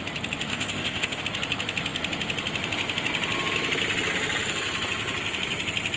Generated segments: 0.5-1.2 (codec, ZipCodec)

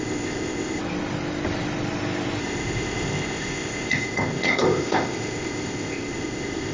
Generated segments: 0.0-0.8 (codec, ZipCodec); 2.4-6.7

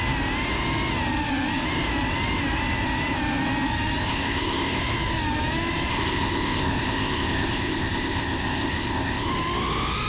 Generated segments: 4.0-4.8 (codec, ZipCodec); 5.9-9.3

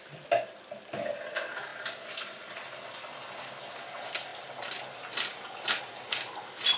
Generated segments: none